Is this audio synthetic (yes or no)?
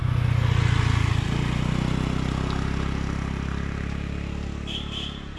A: no